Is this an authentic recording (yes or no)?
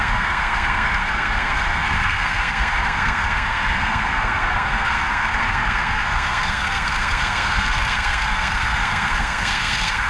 no